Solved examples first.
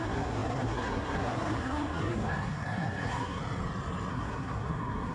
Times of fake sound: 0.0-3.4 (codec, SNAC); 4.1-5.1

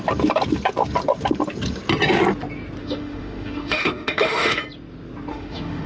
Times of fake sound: 2.8-4.6 (autoencoder, DAC-VAE); 5.3-5.9